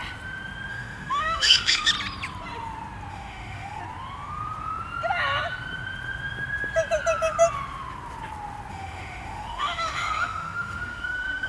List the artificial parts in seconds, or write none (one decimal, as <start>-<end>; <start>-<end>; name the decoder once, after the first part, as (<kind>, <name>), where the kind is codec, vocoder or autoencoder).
0.7-1.9 (autoencoder, DAC-VAE); 3.1-3.8; 8.7-11.5